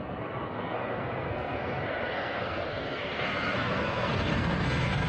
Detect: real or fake fake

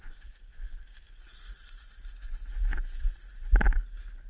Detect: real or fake real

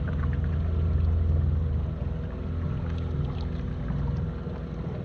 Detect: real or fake real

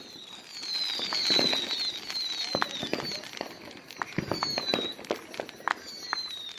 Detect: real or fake real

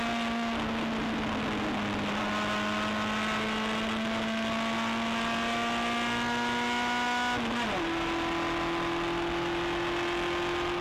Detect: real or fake real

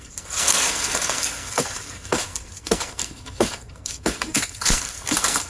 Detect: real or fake fake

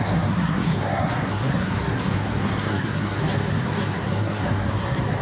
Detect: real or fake fake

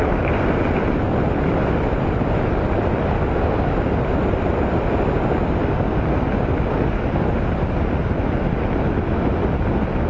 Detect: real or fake real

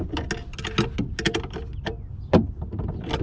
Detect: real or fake real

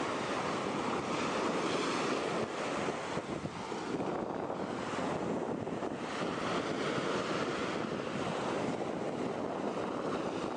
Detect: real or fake real